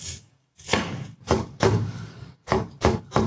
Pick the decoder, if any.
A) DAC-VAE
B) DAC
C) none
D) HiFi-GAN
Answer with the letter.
B